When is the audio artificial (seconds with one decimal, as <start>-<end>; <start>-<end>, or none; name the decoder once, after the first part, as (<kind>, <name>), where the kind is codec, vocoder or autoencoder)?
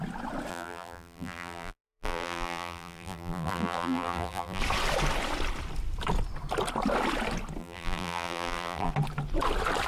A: 0.5-4.6 (vocoder, BigVGAN v2); 7.6-8.9